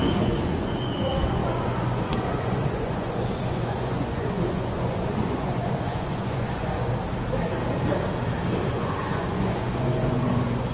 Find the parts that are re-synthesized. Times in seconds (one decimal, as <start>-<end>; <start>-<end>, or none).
0.0-6.9; 8.7-10.7